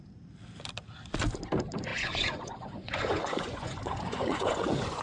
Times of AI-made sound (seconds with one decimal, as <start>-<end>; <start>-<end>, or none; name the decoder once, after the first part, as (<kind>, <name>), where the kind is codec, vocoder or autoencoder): 1.9-5.0 (vocoder, Vocos)